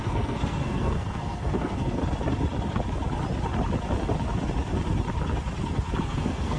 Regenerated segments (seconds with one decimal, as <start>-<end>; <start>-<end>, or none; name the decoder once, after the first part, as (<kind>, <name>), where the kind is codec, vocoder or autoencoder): 0.0-2.0 (codec, SNAC); 6.0-6.6